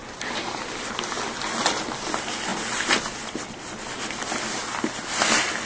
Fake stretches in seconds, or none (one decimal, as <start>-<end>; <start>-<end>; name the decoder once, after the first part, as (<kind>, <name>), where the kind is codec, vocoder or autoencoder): none